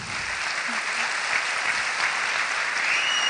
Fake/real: real